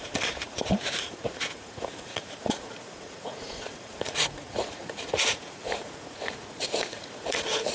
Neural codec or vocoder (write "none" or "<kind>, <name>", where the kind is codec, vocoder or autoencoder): vocoder, Vocos